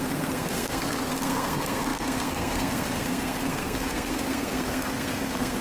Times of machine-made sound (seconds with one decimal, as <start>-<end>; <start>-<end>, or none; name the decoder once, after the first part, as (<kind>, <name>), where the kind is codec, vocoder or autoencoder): 0.0-5.6 (codec, SNAC)